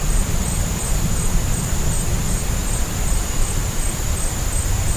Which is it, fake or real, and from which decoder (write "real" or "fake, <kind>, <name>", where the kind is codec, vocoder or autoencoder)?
fake, vocoder, BigVGAN v2